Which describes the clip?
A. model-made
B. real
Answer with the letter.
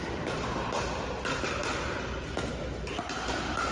B